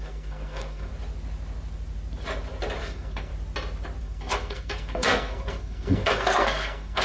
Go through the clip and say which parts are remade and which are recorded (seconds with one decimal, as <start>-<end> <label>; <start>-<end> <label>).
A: 0.0-0.9 remade; 0.9-2.8 recorded; 2.8-3.3 remade; 3.3-4.0 recorded; 4.0-7.0 remade